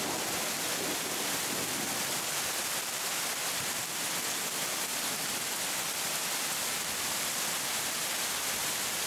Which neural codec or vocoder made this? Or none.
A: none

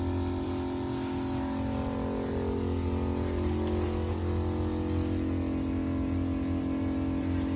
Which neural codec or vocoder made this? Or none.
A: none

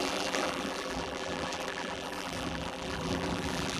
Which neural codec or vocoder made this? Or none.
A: vocoder, BigVGAN v2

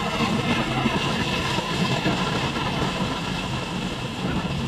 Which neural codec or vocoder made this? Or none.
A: none